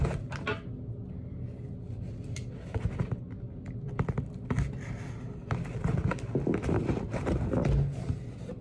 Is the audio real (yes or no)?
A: yes